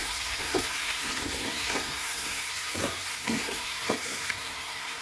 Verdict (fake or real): fake